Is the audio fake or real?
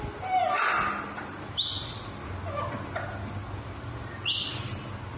real